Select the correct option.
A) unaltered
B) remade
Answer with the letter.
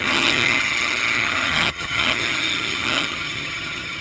B